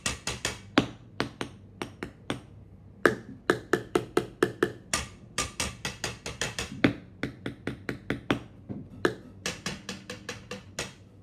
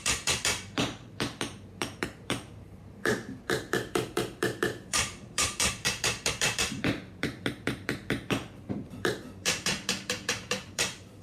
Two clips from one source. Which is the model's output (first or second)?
second